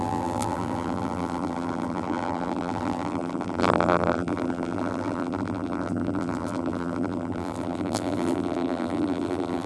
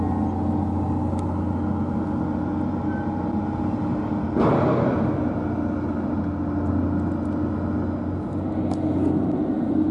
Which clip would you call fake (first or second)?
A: first